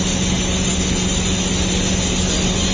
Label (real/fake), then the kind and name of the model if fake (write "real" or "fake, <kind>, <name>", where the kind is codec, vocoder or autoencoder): real